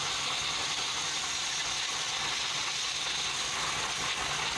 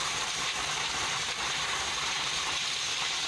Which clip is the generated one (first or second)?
second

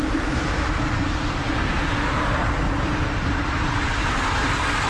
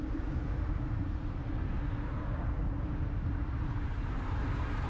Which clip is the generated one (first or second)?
first